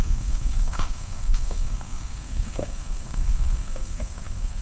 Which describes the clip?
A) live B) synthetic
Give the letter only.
B